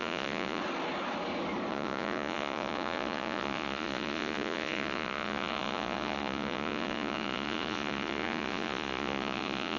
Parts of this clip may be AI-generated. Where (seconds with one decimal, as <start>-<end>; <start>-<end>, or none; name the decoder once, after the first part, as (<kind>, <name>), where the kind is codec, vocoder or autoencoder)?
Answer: 0.0-0.6 (vocoder, Vocos); 1.7-9.8